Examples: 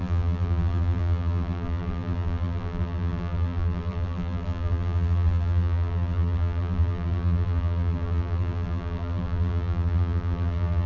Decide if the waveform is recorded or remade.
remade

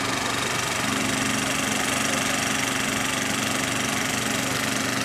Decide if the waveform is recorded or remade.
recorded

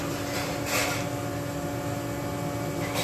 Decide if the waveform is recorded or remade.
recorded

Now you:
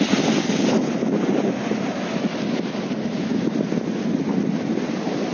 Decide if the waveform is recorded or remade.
recorded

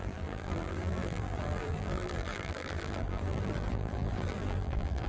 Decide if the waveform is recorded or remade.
remade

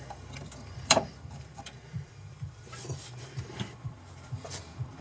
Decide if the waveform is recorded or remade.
remade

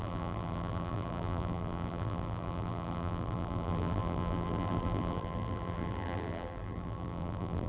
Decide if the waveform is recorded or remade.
remade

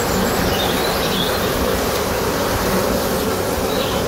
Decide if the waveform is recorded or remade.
recorded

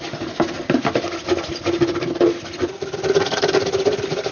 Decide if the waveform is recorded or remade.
recorded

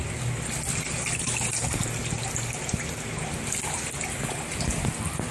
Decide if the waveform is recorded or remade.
recorded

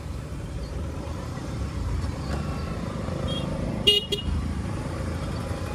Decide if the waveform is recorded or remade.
remade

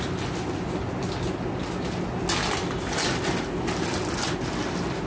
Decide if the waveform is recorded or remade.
recorded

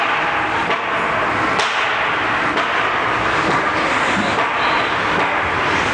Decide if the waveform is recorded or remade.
recorded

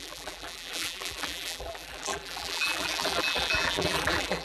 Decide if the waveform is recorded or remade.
remade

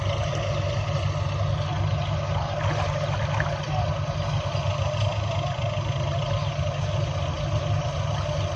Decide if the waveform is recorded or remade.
recorded